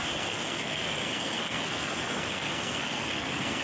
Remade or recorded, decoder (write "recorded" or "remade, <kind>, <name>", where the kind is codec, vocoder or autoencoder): remade, codec, SNAC